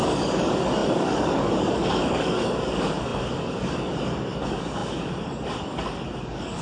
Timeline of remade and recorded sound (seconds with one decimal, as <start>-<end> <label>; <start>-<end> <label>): 0.0-6.6 remade